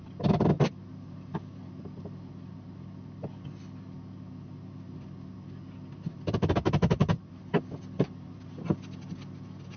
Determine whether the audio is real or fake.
real